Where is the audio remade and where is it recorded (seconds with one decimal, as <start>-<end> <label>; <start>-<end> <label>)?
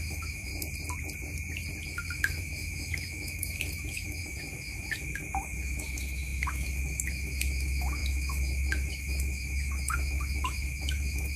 0.0-0.5 remade; 0.5-1.9 recorded; 1.9-11.4 remade